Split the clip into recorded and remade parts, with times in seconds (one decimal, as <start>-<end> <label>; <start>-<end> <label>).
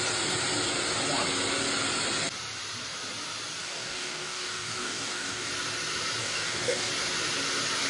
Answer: 0.0-3.6 recorded; 3.6-5.5 remade; 5.5-6.2 recorded; 6.2-6.9 remade; 6.9-7.9 recorded